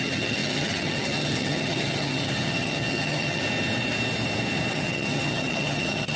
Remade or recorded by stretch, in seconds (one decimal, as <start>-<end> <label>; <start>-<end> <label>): 0.0-3.4 remade; 3.4-4.7 recorded; 4.7-6.2 remade